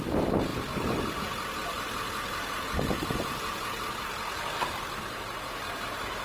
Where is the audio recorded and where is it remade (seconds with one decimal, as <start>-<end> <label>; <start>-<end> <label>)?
0.0-1.6 recorded; 1.6-5.3 remade; 5.3-6.2 recorded